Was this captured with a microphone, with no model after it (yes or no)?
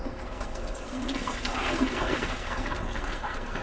no